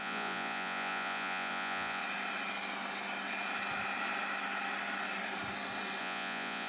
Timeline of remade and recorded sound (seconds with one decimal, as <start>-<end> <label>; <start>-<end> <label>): 0.0-2.0 remade; 2.0-6.0 recorded; 6.0-6.7 remade